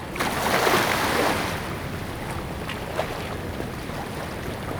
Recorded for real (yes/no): yes